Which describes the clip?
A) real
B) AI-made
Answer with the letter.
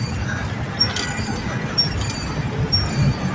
A